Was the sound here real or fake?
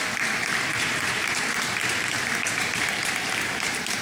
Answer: fake